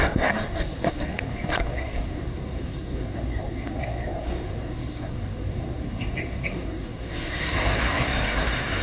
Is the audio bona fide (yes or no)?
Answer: no